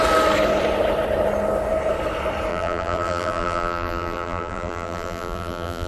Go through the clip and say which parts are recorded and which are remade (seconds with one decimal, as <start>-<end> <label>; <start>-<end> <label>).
0.0-2.5 recorded; 2.5-5.9 remade